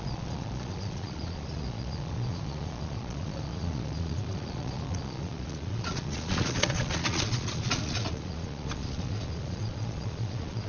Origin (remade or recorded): remade